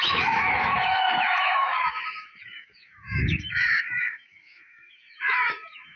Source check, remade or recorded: remade